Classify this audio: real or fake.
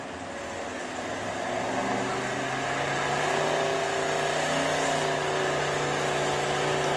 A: real